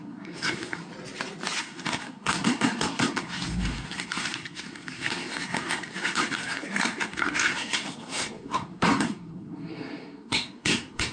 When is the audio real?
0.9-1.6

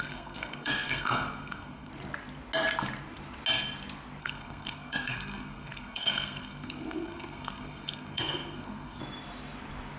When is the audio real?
1.9-4.2; 9.0-10.0

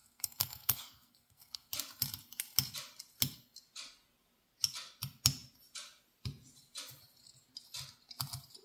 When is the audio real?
1.7-8.6

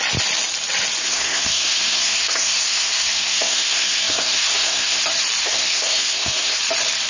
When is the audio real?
0.0-1.0; 5.0-5.4; 6.6-7.1

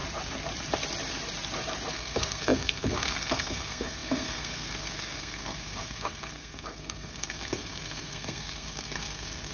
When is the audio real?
0.0-1.9

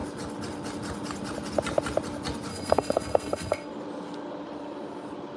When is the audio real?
0.0-2.5; 3.7-5.4

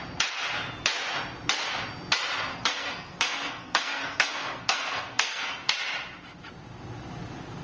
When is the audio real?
0.0-2.5; 5.7-7.6